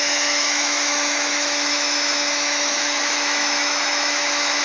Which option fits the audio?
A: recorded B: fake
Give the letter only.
B